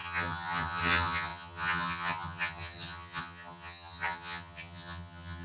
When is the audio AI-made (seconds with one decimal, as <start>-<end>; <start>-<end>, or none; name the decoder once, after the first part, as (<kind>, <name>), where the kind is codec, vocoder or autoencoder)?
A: 0.0-5.4 (vocoder, HiFi-GAN)